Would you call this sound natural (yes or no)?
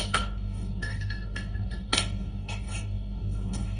no